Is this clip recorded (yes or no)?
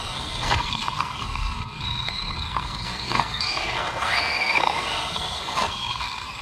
no